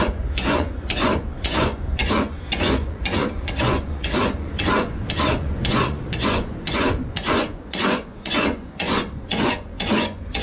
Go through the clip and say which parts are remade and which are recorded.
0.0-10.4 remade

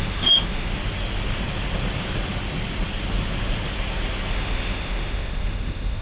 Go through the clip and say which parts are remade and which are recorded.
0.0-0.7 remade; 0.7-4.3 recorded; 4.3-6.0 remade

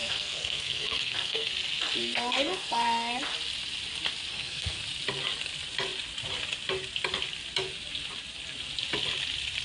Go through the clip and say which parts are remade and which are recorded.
0.0-1.5 remade; 1.5-2.0 recorded; 2.0-3.2 remade; 3.2-4.3 recorded; 4.3-4.8 remade; 4.8-9.6 recorded

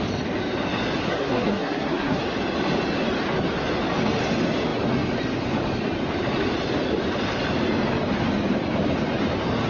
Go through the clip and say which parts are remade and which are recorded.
0.0-1.0 recorded; 1.0-2.2 remade; 2.2-9.7 recorded

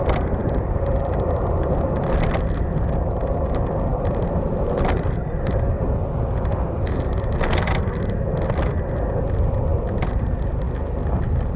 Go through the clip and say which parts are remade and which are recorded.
0.0-0.4 recorded; 0.4-2.1 remade; 2.1-3.9 recorded; 3.9-5.9 remade; 5.9-11.6 recorded